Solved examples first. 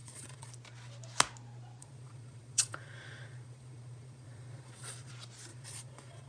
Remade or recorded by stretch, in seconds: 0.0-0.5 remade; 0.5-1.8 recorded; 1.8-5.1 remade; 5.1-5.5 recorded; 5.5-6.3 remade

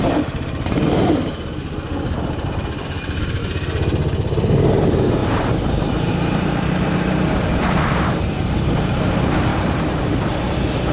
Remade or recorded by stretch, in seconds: 0.0-3.4 remade; 3.4-4.7 recorded; 4.7-10.9 remade

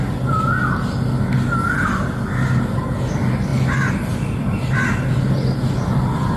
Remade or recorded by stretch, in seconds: 0.0-3.5 recorded; 3.5-6.4 remade

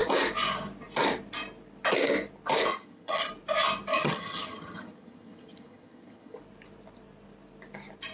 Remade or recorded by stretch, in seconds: 0.0-2.7 recorded; 2.7-3.3 remade; 3.3-3.9 recorded; 3.9-6.4 remade; 6.4-8.1 recorded

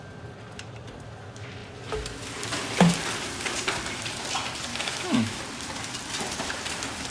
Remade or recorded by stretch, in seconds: 0.0-4.7 recorded; 4.7-5.4 remade; 5.4-7.1 recorded

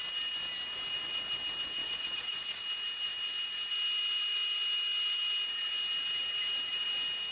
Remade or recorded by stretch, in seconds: 0.0-1.8 recorded; 1.8-2.6 remade; 2.6-7.3 recorded

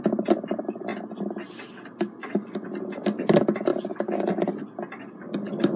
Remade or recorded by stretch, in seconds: 0.0-2.2 recorded; 2.2-2.7 remade; 2.7-5.8 recorded

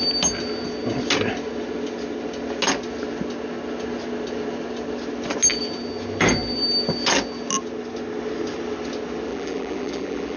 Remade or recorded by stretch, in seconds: 0.0-9.3 recorded; 9.3-10.4 remade